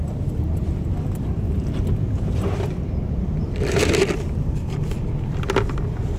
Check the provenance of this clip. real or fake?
fake